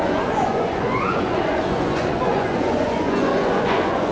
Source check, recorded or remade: remade